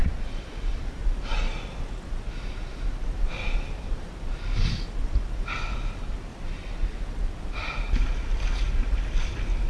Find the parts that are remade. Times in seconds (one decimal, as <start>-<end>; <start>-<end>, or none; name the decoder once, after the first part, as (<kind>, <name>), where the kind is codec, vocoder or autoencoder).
0.0-1.0 (vocoder, BigVGAN v2); 2.2-6.3; 9.2-9.7